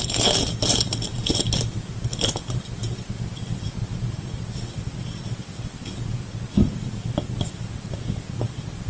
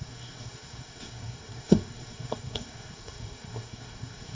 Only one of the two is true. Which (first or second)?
first